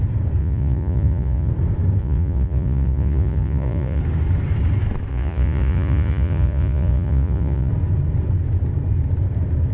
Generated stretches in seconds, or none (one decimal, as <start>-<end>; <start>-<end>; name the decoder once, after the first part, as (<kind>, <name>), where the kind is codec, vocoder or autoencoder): 0.4-1.5 (vocoder, Vocos); 2.0-4.0; 5.1-7.7